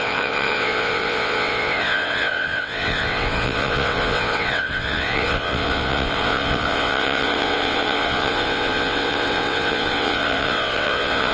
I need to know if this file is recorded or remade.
remade